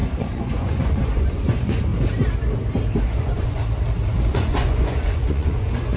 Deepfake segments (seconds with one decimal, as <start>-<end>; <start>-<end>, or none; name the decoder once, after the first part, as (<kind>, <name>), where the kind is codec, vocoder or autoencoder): 0.0-1.9 (vocoder, Vocos); 3.0-3.6; 4.3-6.0